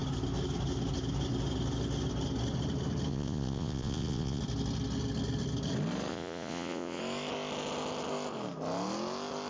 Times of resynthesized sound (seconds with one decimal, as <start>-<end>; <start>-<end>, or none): 3.1-4.4; 6.1-7.0